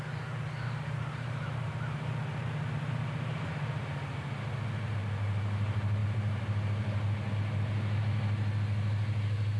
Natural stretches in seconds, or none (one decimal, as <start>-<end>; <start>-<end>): 0.0-9.6